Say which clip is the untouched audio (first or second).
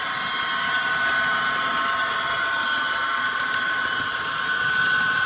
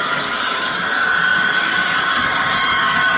first